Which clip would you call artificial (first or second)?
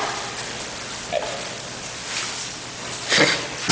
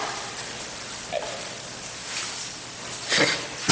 second